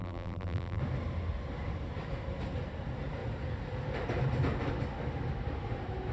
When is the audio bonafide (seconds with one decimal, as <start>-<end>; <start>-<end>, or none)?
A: 0.8-6.1